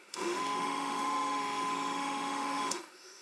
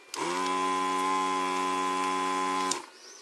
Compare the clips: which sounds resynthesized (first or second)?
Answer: first